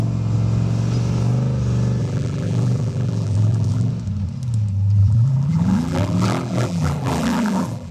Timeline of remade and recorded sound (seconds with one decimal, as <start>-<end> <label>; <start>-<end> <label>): 0.0-2.0 recorded; 2.0-3.9 remade; 3.9-5.0 recorded; 5.0-7.9 remade